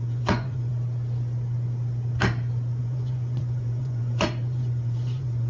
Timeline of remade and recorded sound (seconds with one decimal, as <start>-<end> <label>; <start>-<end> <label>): 0.0-0.7 remade; 0.7-2.8 recorded; 2.8-5.5 remade